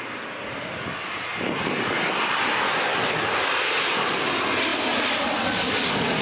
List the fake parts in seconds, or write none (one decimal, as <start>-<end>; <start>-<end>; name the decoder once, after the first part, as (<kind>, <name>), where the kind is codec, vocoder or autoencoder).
none